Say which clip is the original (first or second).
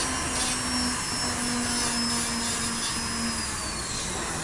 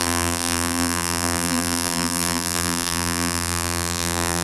first